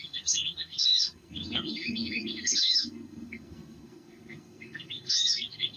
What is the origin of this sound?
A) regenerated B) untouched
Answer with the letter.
A